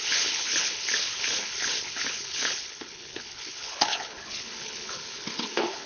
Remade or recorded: remade